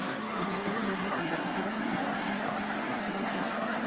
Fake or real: fake